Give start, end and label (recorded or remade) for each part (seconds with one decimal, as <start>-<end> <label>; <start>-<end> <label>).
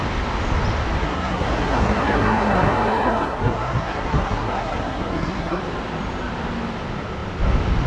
0.0-1.0 recorded; 1.0-5.6 remade; 5.6-7.9 recorded